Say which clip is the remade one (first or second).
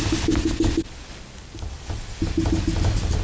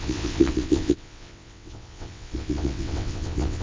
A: second